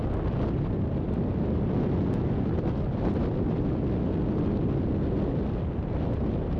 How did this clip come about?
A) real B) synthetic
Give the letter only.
A